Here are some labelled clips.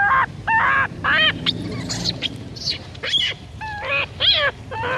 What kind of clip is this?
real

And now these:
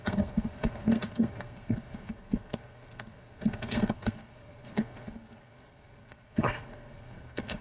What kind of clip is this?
fake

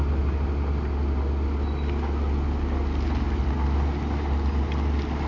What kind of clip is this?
real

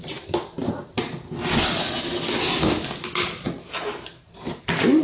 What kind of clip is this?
real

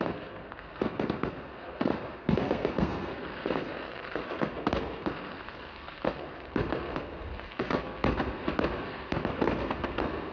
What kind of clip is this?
fake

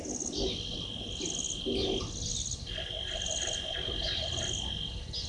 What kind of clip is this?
real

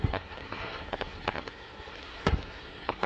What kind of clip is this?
fake